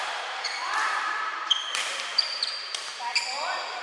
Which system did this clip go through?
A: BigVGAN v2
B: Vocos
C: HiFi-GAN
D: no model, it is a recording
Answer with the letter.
A